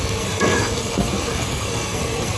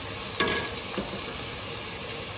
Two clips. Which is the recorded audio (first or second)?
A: second